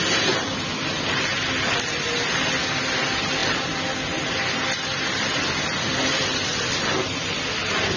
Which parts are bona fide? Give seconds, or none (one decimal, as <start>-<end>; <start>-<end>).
0.0-3.4; 7.4-8.0